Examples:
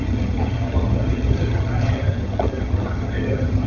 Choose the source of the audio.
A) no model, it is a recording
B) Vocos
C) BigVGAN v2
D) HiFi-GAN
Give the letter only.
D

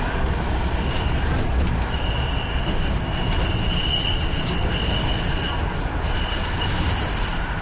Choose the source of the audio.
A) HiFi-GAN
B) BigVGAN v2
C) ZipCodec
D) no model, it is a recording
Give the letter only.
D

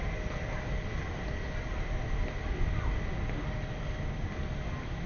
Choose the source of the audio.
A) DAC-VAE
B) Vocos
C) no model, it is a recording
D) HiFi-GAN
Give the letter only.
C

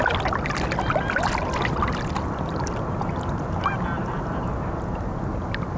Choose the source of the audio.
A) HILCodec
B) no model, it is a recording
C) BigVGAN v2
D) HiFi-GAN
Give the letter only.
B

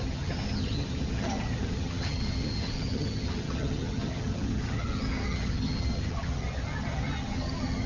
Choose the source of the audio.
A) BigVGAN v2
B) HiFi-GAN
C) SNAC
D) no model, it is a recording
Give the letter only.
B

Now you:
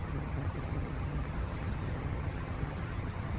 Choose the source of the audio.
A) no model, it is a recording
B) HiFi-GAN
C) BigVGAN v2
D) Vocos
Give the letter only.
B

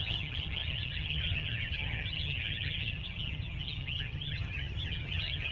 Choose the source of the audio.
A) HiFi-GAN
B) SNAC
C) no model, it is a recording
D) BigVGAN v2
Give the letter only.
A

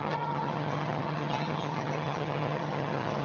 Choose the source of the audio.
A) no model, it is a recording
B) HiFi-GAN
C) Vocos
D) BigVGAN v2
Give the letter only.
B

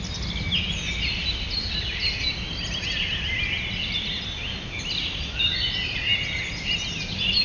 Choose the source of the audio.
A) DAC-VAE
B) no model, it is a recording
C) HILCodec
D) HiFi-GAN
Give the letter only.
B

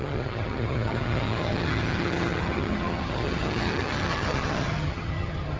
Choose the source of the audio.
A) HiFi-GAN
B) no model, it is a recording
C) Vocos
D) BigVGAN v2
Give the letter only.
A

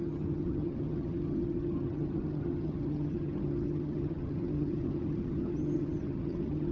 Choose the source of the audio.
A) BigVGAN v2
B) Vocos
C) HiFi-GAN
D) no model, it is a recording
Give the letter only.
C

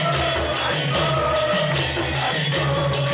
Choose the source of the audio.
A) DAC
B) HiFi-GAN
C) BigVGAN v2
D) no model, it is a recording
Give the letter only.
D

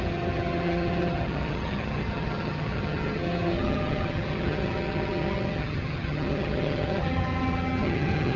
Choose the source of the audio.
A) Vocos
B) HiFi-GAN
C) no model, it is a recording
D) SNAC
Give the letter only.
B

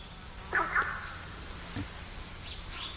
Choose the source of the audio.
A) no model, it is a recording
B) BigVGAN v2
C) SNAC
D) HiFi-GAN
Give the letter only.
A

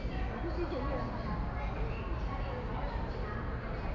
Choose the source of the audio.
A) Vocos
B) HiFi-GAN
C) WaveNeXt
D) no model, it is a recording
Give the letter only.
D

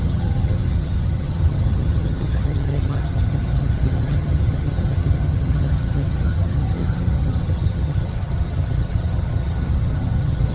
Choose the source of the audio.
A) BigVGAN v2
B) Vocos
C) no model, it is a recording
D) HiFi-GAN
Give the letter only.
D